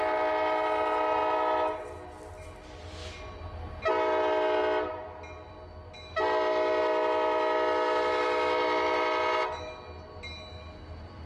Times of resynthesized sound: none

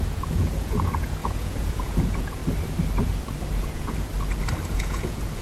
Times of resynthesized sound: 0.0-2.4 (vocoder, Vocos); 3.6-4.1; 4.7-5.4

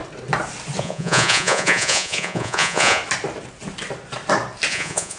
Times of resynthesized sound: 0.8-3.0 (vocoder, Vocos); 4.7-5.2

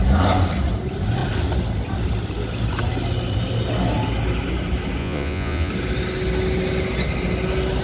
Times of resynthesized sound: 5.0-5.7 (vocoder, Vocos)

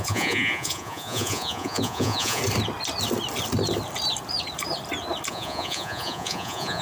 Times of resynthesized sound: 0.0-2.4 (vocoder, Vocos); 5.3-6.8

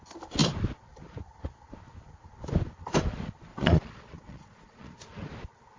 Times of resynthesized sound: 3.5-5.0 (vocoder, Vocos)

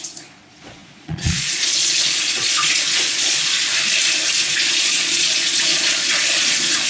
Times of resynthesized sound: 0.0-3.7 (vocoder, Vocos); 4.5-6.9